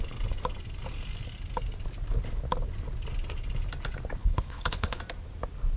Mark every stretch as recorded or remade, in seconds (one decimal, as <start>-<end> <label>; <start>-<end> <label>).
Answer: 0.0-4.2 recorded; 4.2-5.0 remade; 5.0-5.8 recorded